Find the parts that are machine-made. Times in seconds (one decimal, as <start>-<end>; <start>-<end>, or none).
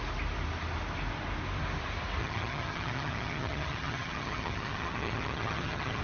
2.2-6.0